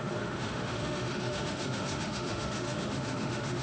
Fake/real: fake